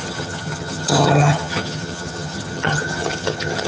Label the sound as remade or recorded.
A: remade